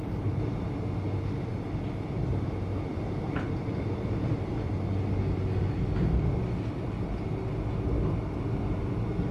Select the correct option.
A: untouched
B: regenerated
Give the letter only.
A